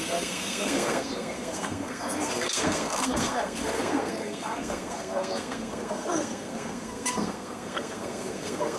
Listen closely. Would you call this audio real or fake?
fake